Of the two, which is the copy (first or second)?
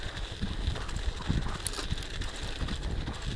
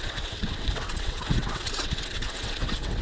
second